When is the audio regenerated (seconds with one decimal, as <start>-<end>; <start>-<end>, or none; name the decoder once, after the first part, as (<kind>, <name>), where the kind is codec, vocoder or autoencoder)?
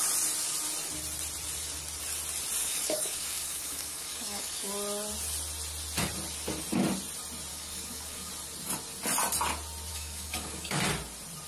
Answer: 2.6-4.7 (codec, DAC); 7.5-8.3; 9.9-10.8